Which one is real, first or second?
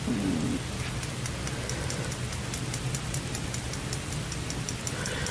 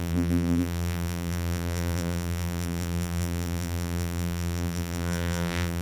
first